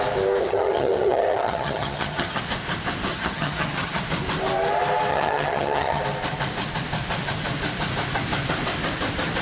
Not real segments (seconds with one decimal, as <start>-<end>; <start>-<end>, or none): 0.4-2.4; 3.1-4.0; 5.1-6.0